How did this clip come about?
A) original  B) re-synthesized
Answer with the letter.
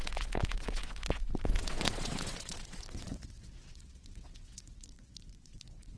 B